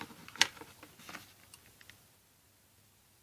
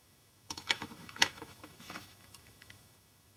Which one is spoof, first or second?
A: second